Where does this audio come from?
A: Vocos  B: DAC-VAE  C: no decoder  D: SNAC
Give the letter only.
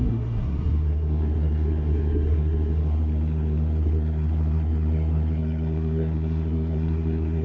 D